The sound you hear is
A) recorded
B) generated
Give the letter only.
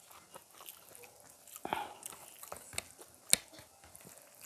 A